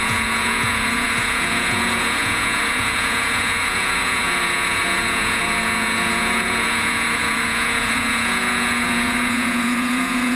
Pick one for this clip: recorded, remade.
remade